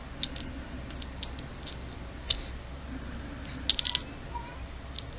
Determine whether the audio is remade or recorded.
recorded